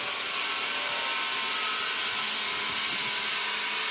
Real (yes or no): yes